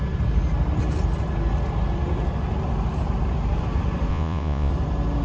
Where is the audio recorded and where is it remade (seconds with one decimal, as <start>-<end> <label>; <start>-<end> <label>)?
0.0-4.1 recorded; 4.1-4.7 remade; 4.7-5.2 recorded

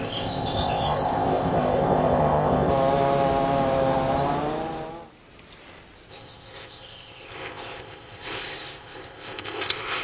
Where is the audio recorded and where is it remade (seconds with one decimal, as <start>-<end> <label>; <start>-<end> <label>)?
0.0-2.7 remade; 2.7-6.1 recorded; 6.1-10.0 remade

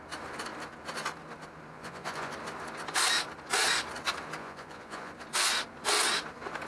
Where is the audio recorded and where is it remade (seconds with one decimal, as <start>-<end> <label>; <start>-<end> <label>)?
0.0-1.7 recorded; 1.7-2.3 remade; 2.3-4.4 recorded; 4.4-5.1 remade; 5.1-6.7 recorded

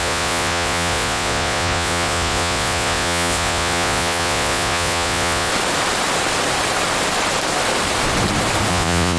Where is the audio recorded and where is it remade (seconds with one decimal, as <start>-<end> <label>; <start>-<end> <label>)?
0.0-5.5 remade; 5.5-8.7 recorded; 8.7-9.2 remade